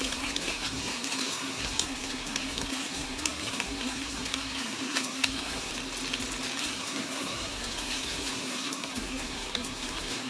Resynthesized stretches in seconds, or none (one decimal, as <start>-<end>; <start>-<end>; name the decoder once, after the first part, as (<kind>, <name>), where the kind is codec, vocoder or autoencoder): 0.0-5.7 (codec, SNAC); 6.6-10.3